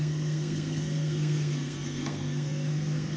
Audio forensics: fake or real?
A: fake